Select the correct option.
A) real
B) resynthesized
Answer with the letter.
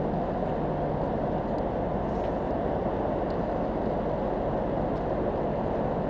A